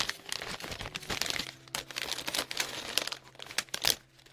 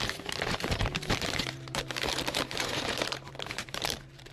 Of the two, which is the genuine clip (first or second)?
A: first